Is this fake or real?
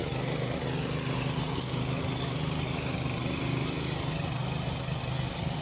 real